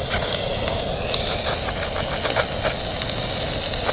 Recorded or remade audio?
recorded